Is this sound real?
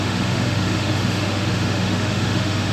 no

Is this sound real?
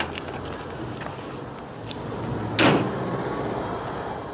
yes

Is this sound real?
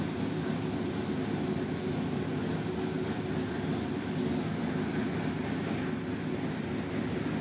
yes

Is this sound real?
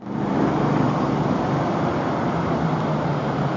yes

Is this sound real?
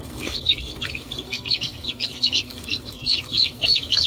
no